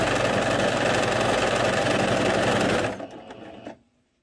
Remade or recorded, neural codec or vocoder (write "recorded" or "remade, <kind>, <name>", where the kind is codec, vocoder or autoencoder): recorded